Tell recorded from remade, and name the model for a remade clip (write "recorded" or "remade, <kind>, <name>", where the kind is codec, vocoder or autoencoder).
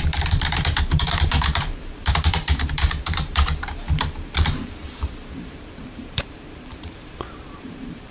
remade, vocoder, BigVGAN v2